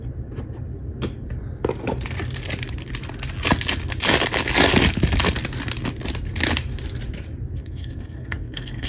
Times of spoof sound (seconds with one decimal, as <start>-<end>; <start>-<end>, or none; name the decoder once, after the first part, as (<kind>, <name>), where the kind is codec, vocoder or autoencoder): 7.6-8.9 (codec, SNAC)